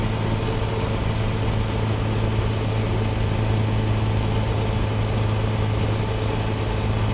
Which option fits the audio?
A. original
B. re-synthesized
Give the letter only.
A